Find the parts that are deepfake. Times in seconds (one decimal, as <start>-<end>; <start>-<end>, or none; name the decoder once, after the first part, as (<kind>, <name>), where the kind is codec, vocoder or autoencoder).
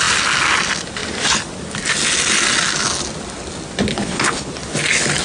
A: 3.9-4.5 (codec, HILCodec)